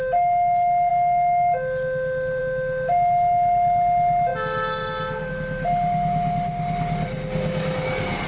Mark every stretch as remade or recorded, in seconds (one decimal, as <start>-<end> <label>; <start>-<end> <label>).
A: 0.0-8.3 recorded

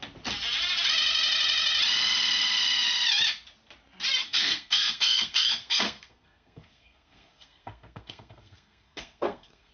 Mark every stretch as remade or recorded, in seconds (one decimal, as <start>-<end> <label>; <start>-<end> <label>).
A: 0.0-4.2 recorded; 4.2-9.7 remade

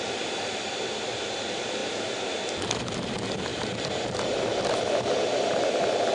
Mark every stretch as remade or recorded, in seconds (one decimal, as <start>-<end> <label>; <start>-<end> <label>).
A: 0.0-6.1 recorded